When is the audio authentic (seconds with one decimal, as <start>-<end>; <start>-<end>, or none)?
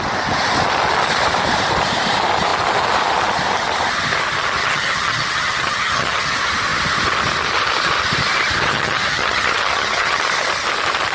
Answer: 0.0-4.6; 6.3-8.7; 10.2-11.1